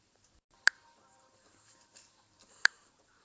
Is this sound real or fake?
fake